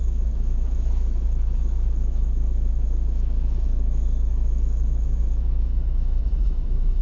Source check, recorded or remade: remade